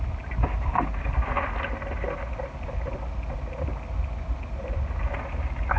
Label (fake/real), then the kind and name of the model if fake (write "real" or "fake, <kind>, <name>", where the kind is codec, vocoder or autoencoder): real